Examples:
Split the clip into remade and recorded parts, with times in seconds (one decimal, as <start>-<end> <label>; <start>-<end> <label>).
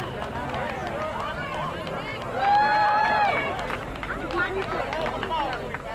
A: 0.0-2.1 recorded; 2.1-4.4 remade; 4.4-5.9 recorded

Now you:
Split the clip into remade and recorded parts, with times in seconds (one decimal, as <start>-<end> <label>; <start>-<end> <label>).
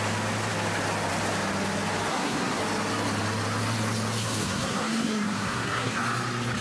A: 0.0-2.1 recorded; 2.1-2.6 remade; 2.6-4.2 recorded; 4.2-6.0 remade; 6.0-6.6 recorded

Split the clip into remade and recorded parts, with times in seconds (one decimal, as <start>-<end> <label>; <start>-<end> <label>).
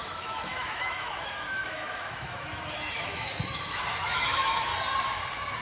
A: 0.0-4.7 remade; 4.7-5.6 recorded